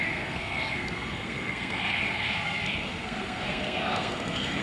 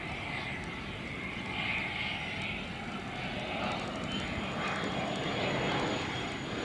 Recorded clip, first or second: second